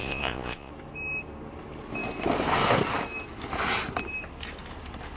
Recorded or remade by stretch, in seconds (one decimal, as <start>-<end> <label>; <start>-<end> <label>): 0.0-0.7 remade; 0.7-5.2 recorded